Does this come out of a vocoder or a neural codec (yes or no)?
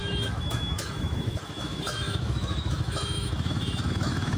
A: yes